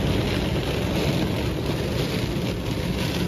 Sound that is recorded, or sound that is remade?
recorded